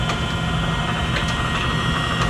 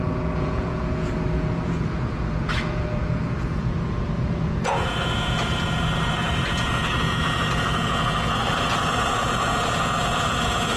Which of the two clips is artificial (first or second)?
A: second